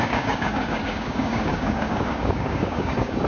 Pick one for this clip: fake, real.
fake